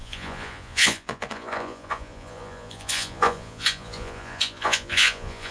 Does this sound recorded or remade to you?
remade